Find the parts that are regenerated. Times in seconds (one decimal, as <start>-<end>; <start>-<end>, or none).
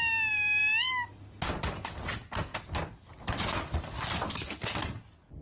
none